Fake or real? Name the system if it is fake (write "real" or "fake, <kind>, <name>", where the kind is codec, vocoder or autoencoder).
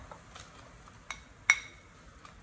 real